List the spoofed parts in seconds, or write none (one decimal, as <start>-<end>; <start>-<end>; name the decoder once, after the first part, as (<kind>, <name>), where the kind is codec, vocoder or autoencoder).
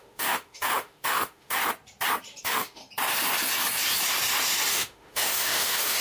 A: 0.0-1.6 (autoencoder, DAC-VAE); 2.4-2.8; 4.7-6.0